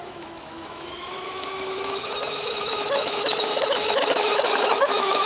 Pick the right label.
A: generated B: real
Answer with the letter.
A